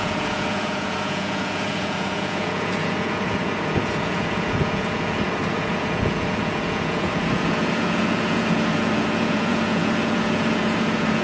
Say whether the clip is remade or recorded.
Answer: remade